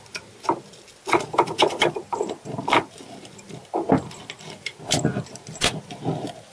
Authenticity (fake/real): real